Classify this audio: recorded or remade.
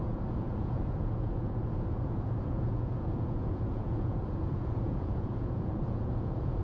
remade